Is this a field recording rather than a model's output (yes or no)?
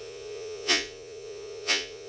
no